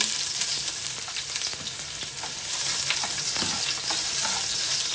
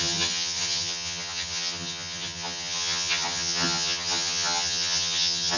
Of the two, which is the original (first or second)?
first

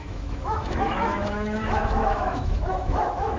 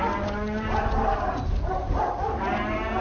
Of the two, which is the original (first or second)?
second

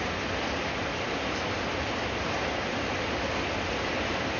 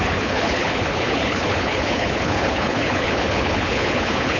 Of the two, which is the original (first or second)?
first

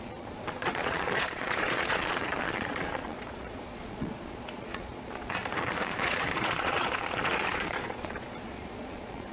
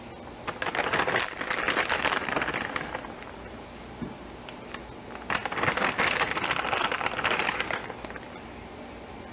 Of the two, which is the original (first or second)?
second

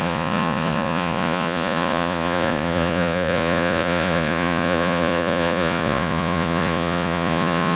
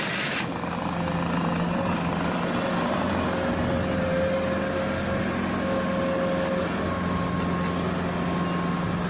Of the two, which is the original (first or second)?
second